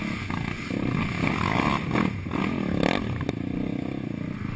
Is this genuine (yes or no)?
yes